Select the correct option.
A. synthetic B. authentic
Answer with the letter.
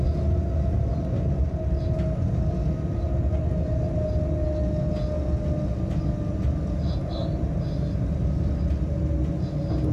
B